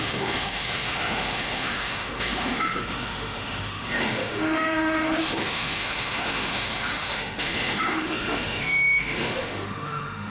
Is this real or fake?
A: fake